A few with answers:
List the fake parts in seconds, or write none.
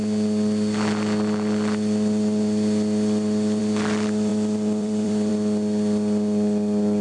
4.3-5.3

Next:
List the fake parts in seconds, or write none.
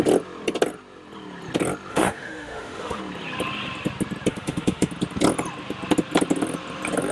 1.9-3.0; 4.3-4.9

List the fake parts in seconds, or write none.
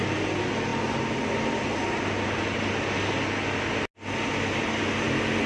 none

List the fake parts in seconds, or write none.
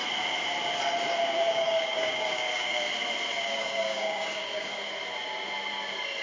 1.2-2.9; 3.3-4.9